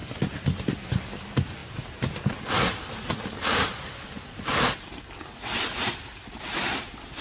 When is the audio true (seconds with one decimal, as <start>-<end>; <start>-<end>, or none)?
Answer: 0.0-7.2